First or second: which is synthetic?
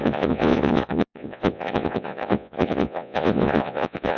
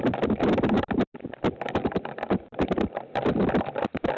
first